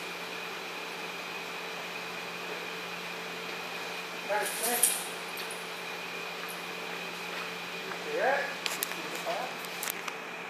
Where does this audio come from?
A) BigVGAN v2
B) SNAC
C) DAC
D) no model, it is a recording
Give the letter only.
D